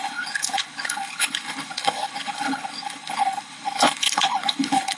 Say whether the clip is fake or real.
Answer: fake